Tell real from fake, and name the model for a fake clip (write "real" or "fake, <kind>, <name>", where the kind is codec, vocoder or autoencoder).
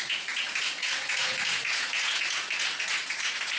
fake, vocoder, Vocos